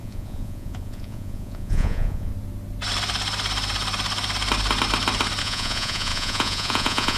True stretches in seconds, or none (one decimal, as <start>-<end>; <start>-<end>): 2.3-5.4